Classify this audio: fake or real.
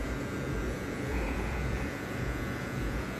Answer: fake